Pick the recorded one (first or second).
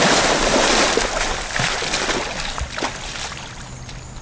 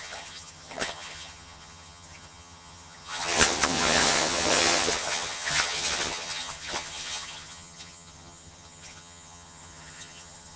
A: first